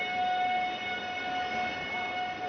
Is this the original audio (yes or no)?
yes